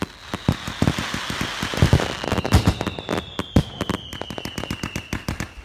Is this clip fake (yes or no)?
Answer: no